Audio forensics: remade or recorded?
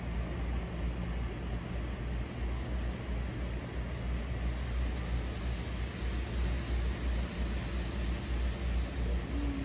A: recorded